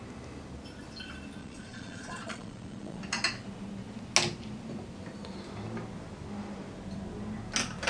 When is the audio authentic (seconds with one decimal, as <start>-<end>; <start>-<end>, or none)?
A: 0.0-1.4; 3.0-7.9